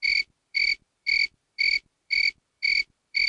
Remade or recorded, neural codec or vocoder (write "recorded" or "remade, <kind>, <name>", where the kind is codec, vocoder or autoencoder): remade, vocoder, BigVGAN v2